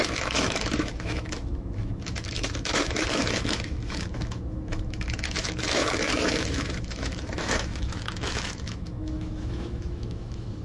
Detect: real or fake fake